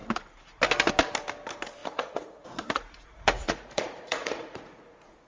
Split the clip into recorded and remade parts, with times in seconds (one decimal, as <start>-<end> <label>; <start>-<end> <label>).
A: 0.0-1.8 recorded; 1.8-5.3 remade